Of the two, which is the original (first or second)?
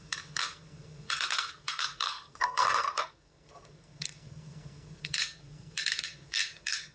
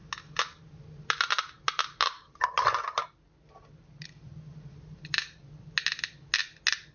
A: second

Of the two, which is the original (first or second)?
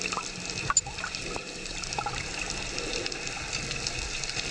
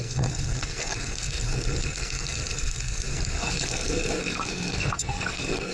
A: first